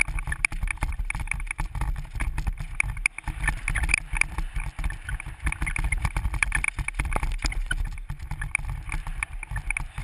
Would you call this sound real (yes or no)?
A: no